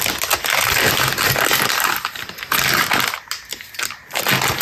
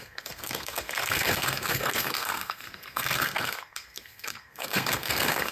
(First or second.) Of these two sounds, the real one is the first